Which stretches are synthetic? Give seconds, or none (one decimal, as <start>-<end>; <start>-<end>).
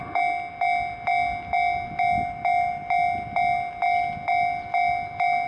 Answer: none